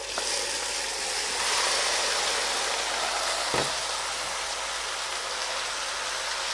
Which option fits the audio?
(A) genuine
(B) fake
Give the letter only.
A